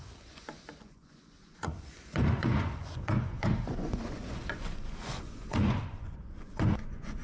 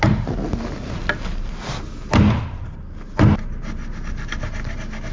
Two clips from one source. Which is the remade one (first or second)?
first